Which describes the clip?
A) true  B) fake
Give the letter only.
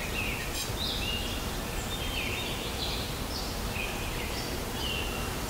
A